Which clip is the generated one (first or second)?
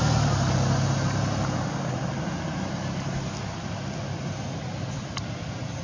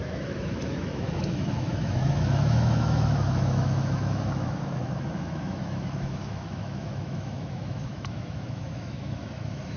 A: second